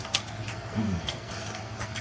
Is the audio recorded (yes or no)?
no